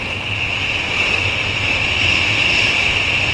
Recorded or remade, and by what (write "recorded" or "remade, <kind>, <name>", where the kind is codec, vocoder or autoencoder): recorded